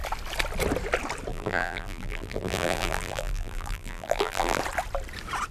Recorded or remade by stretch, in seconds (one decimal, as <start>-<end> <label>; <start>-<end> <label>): 0.0-1.3 recorded; 1.3-4.6 remade; 4.6-5.5 recorded

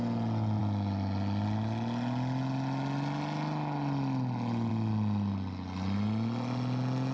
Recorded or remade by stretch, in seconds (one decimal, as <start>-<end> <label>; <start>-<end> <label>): 0.0-7.1 recorded

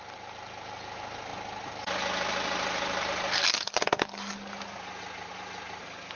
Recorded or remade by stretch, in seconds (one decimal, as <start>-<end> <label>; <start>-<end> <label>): 0.0-6.2 recorded

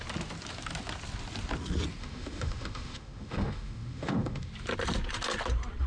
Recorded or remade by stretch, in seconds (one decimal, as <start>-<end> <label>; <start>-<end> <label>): 0.0-2.0 recorded; 2.0-4.5 remade; 4.5-5.9 recorded

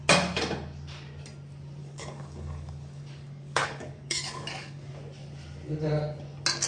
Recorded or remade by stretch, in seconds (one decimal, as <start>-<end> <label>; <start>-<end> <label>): 0.0-1.8 recorded; 1.8-4.9 remade; 4.9-6.7 recorded

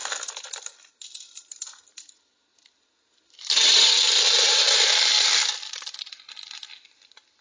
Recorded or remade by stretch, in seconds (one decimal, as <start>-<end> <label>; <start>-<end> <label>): 0.0-7.4 recorded

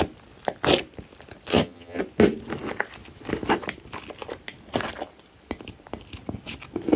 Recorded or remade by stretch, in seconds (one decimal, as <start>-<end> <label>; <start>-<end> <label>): 0.0-1.5 recorded; 1.5-2.0 remade; 2.0-7.0 recorded